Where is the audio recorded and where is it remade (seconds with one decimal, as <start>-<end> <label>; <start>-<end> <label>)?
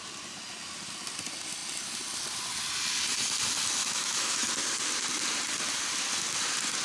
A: 0.0-3.8 recorded; 3.8-4.5 remade; 4.5-6.8 recorded